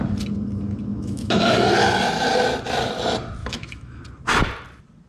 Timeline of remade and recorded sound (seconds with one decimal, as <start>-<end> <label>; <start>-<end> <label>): 0.0-0.9 recorded; 0.9-1.4 remade; 1.4-3.4 recorded; 3.4-4.0 remade; 4.0-5.1 recorded